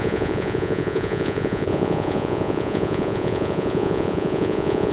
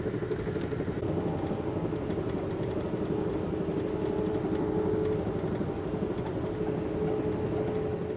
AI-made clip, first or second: first